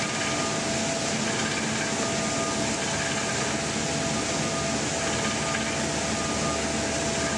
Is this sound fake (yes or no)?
no